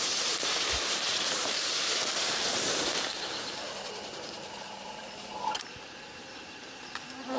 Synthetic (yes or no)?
yes